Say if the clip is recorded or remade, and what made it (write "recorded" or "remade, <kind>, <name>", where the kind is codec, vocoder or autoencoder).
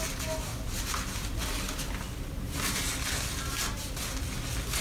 recorded